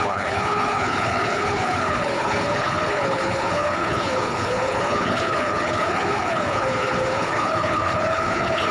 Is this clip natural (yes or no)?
no